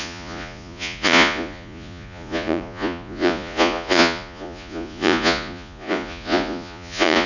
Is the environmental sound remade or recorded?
remade